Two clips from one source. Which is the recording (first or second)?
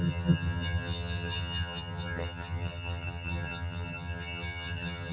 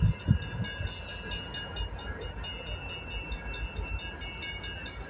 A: second